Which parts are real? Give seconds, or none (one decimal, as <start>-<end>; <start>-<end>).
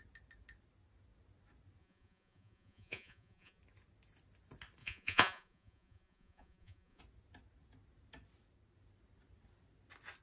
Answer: 0.0-1.8; 3.6-4.8; 7.0-10.2